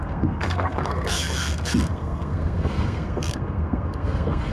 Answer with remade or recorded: remade